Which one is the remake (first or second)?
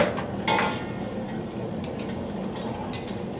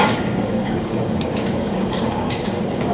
second